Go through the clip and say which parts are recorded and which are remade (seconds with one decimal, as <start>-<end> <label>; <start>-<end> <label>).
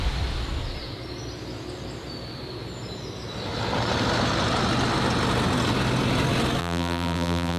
0.0-6.6 recorded; 6.6-7.6 remade